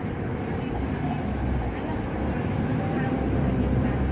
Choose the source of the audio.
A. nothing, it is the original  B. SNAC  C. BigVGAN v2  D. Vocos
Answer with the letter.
C